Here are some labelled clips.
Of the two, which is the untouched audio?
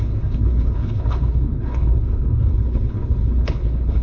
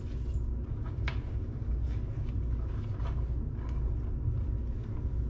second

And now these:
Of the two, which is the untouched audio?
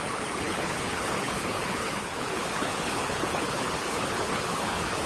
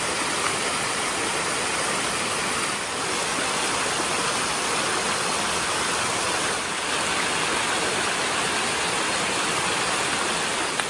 second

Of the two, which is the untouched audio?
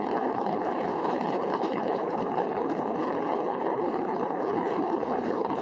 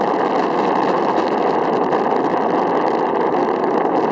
second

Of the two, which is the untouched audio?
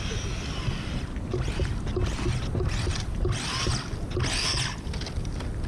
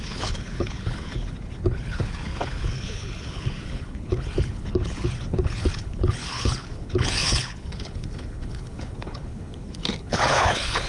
first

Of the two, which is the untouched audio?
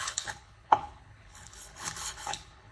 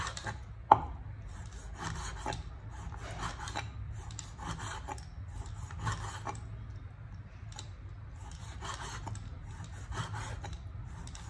second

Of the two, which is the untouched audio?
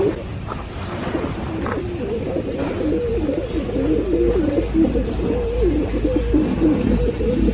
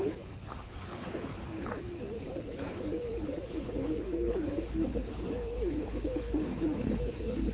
first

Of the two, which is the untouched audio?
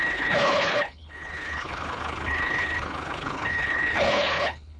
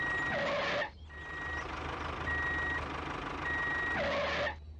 second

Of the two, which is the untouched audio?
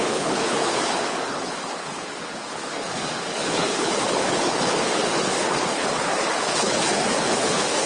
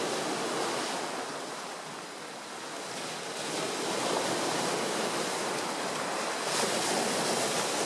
second